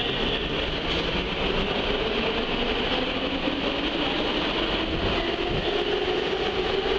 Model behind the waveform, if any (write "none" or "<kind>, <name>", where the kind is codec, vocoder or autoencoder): none